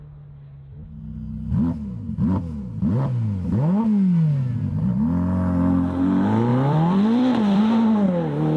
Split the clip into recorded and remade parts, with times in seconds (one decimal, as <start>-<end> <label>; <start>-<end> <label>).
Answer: 0.0-6.5 recorded; 6.5-7.6 remade; 7.6-8.6 recorded